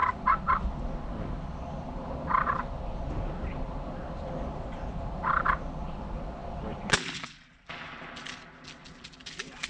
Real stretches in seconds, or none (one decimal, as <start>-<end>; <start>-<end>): 0.0-9.7